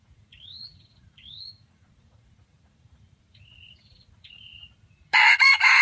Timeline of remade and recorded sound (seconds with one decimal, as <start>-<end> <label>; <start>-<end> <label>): 0.0-5.8 remade